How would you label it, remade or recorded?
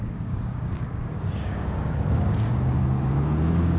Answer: remade